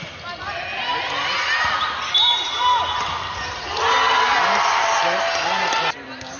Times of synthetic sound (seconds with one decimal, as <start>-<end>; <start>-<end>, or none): none

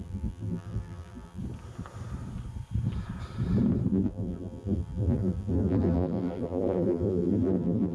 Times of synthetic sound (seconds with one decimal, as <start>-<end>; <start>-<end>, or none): 0.0-1.4; 3.9-7.9

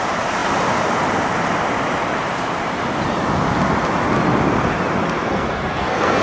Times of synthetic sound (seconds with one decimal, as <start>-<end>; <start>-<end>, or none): 5.3-6.2

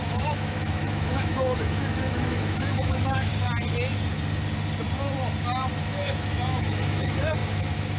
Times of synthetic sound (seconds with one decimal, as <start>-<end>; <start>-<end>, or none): 0.0-3.3; 5.8-8.0

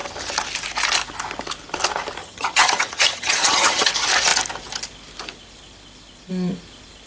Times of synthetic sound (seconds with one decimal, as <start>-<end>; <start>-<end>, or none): 2.2-3.9

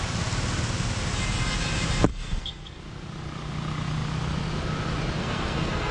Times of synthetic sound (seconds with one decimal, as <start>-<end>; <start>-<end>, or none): 2.1-2.8; 5.2-5.9

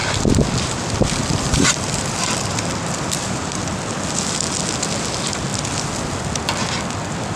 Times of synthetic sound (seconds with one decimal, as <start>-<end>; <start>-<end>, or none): 0.0-0.6; 1.2-3.5

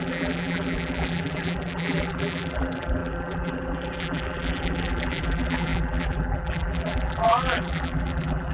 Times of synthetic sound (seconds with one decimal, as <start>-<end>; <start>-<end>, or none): 0.0-8.5